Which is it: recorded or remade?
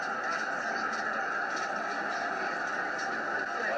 recorded